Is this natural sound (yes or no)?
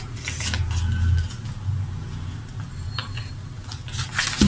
yes